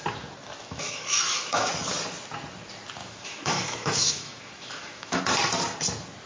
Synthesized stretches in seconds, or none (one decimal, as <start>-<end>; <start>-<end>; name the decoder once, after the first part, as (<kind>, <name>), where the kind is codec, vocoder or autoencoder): 0.6-1.7 (autoencoder, DAC-VAE); 3.0-5.2